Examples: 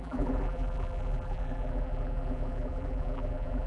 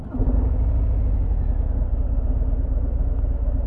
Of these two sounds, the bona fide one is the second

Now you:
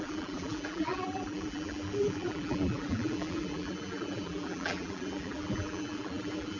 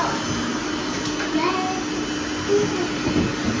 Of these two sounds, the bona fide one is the second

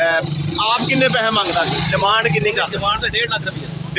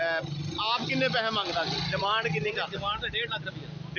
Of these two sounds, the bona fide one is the second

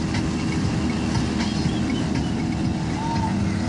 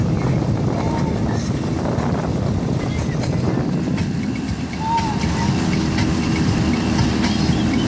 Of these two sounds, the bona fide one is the first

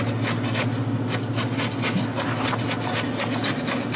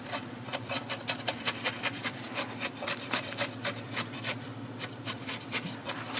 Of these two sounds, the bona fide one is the first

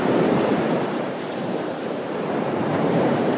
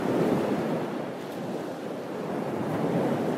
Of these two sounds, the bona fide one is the second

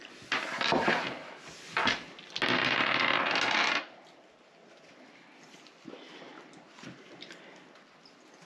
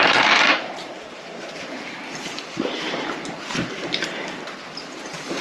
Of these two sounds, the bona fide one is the first